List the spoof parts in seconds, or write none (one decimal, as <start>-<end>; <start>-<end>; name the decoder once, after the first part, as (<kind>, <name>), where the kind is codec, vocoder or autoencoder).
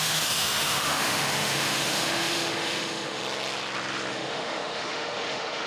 0.0-3.2 (autoencoder, DAC-VAE); 4.1-5.7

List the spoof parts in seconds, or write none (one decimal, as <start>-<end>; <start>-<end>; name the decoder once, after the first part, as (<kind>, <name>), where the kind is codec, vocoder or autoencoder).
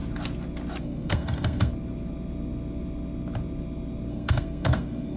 0.8-1.7 (codec, SNAC); 4.1-5.2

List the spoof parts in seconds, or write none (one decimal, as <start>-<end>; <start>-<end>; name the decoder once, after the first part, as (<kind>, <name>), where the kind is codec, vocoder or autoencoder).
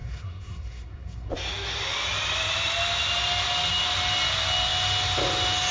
0.0-1.3 (codec, SNAC)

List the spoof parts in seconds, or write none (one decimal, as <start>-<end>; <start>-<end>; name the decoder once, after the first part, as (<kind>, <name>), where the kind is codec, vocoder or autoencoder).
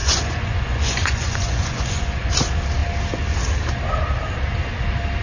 0.0-2.3 (vocoder, Vocos)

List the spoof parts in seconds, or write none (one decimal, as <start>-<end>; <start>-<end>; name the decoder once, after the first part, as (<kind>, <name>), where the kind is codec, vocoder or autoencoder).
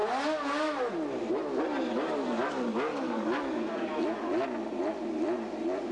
2.9-3.9 (codec, DAC)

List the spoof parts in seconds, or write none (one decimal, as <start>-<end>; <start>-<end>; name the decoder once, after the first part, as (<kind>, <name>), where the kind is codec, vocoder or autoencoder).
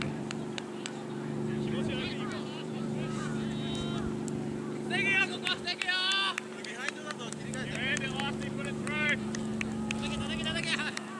0.0-3.3 (vocoder, BigVGAN v2); 5.2-9.5; 10.4-11.2